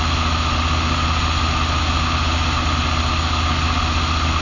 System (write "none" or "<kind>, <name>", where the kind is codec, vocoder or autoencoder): none